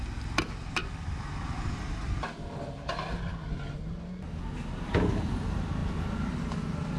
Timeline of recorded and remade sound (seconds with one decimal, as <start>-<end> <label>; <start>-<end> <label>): 0.0-7.0 recorded